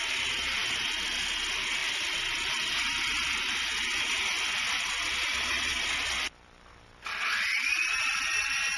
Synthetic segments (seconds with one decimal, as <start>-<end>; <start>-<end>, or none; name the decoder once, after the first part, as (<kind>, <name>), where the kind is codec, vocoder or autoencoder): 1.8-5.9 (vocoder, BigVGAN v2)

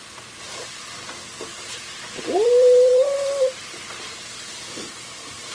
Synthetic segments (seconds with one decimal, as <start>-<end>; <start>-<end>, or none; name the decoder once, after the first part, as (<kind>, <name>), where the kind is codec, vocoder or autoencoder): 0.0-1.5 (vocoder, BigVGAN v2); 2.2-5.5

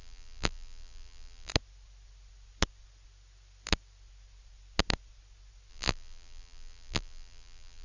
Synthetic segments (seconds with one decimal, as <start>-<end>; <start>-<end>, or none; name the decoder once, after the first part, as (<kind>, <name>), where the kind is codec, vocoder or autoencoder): 0.0-1.5 (vocoder, BigVGAN v2); 5.7-7.8